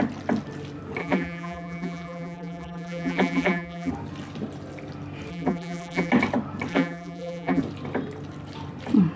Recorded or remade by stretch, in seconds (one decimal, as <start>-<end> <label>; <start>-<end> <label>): 0.0-1.0 recorded; 1.0-3.9 remade; 3.9-5.3 recorded; 5.3-6.1 remade; 6.1-6.7 recorded; 6.7-7.6 remade; 7.6-9.2 recorded

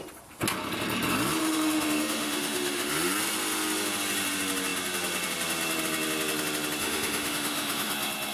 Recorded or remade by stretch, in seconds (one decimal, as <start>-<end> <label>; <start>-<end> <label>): 0.0-1.4 recorded; 1.4-2.9 remade; 2.9-6.8 recorded; 6.8-7.9 remade; 7.9-8.3 recorded